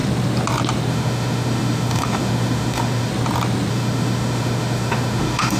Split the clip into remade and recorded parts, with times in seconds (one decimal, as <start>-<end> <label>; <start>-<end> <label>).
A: 0.0-0.9 recorded; 0.9-3.1 remade; 3.1-3.7 recorded; 3.7-5.6 remade

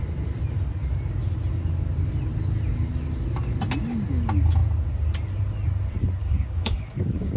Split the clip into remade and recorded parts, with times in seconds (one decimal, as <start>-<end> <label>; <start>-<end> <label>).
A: 0.0-6.2 recorded; 6.2-7.4 remade

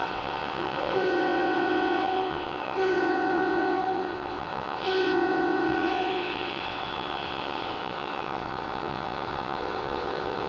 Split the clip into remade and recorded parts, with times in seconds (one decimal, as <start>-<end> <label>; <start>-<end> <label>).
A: 0.0-10.5 remade

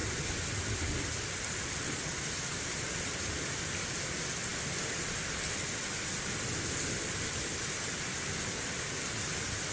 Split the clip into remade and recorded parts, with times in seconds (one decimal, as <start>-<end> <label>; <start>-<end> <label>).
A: 0.0-9.7 recorded

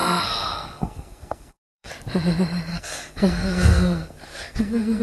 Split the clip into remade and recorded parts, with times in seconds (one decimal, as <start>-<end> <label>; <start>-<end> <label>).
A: 0.0-1.9 remade; 1.9-2.7 recorded; 2.7-5.0 remade